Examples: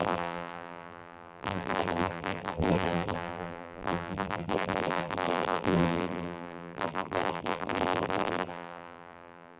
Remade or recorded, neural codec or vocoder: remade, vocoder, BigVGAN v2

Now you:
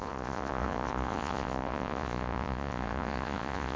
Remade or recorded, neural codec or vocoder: remade, vocoder, Vocos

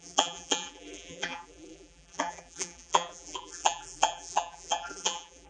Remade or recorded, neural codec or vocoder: remade, vocoder, BigVGAN v2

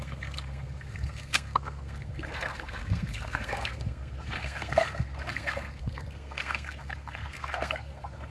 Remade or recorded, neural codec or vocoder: remade, codec, SNAC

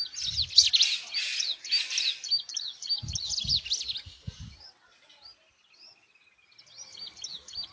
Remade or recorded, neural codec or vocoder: recorded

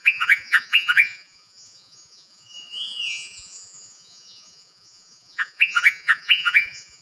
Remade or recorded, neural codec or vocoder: remade, vocoder, Vocos